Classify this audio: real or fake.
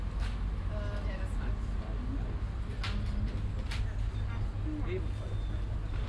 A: real